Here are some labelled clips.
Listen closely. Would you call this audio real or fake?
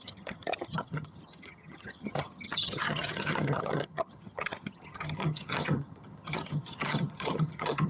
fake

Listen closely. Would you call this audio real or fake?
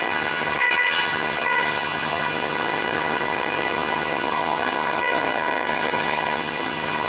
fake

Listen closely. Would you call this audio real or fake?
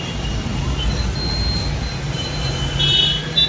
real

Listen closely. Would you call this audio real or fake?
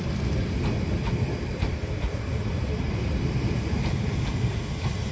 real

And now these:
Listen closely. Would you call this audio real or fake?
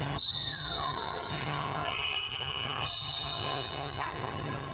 fake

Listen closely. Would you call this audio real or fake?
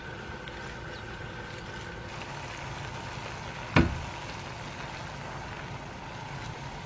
real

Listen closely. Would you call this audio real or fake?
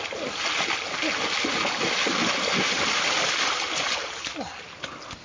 real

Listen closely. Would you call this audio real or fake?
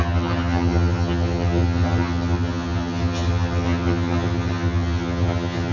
fake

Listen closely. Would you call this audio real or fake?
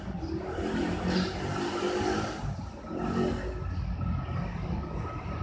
real